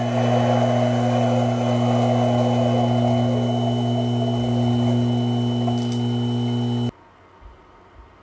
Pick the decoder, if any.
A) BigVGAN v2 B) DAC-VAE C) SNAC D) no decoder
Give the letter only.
D